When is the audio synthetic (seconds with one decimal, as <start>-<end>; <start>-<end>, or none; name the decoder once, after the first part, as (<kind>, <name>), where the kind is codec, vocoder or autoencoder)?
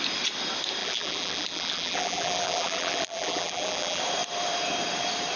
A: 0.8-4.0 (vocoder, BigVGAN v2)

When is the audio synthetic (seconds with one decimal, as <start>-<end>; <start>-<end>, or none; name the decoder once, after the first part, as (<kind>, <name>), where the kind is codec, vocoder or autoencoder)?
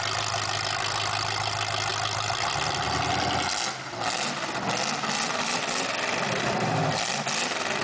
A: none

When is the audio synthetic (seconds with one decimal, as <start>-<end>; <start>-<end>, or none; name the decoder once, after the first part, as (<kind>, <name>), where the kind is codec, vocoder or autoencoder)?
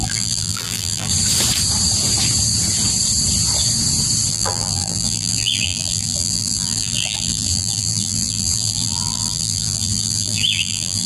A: 0.0-1.1 (vocoder, BigVGAN v2); 4.3-11.1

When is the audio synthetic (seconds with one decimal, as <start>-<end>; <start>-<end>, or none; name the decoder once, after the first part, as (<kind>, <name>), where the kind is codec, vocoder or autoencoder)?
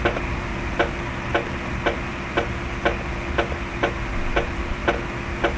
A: 0.0-0.5 (vocoder, BigVGAN v2); 3.7-4.8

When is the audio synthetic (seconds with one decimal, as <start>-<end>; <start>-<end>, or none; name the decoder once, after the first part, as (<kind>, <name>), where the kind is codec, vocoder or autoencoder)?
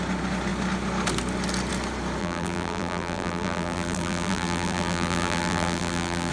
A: 2.2-6.3 (vocoder, BigVGAN v2)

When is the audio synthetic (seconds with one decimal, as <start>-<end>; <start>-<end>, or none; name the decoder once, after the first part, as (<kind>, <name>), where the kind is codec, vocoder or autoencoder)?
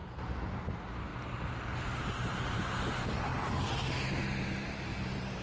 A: 0.7-1.1 (vocoder, BigVGAN v2); 1.9-3.3; 4.4-5.4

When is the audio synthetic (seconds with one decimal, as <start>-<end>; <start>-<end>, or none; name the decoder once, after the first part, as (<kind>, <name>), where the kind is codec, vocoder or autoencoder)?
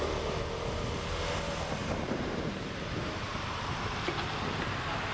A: 1.8-3.6 (vocoder, BigVGAN v2)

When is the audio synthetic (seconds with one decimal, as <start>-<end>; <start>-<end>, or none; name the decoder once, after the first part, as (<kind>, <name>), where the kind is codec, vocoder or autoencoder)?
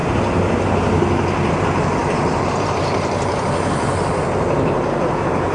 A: 0.0-1.5 (vocoder, BigVGAN v2); 2.0-3.4